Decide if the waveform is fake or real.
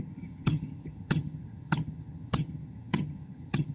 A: fake